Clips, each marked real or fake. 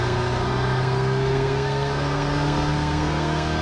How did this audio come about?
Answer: fake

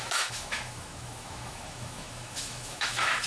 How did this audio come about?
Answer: fake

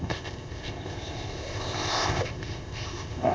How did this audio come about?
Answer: fake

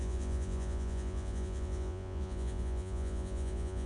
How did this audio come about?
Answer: fake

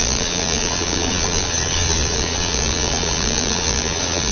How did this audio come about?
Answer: fake